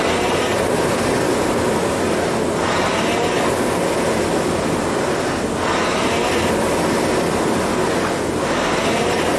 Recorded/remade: recorded